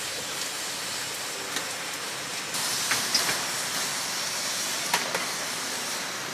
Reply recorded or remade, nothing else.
recorded